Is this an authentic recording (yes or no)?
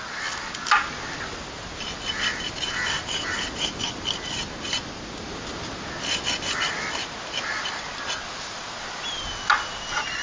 yes